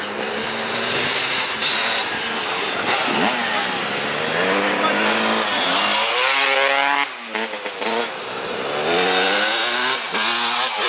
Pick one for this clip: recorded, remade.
recorded